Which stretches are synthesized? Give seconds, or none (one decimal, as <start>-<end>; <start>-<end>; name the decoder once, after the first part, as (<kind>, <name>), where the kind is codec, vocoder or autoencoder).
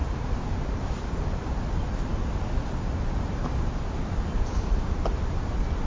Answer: 0.0-3.5 (vocoder, BigVGAN v2)